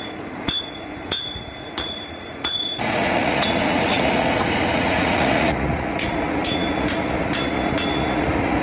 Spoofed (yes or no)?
yes